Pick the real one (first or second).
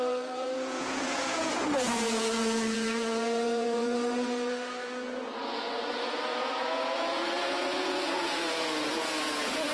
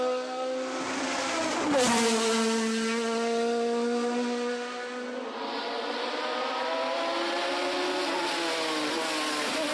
second